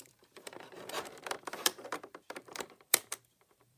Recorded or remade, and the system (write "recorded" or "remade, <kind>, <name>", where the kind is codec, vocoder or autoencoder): remade, vocoder, BigVGAN v2